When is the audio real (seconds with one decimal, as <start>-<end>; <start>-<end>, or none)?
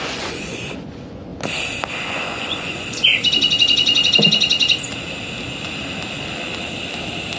1.3-1.9; 3.1-7.4